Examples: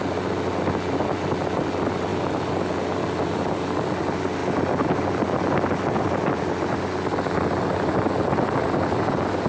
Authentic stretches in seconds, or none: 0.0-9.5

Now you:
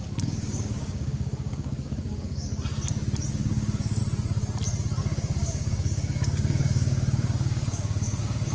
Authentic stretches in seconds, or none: 2.5-3.3; 4.0-5.0

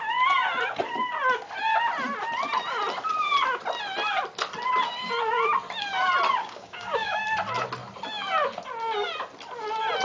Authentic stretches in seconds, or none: 0.0-6.4; 7.2-10.0

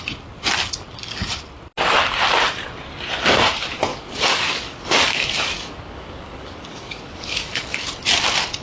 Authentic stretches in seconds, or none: 0.0-3.9; 7.9-8.6

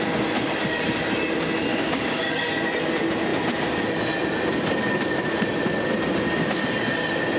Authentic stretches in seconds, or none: 0.0-1.7; 2.5-7.4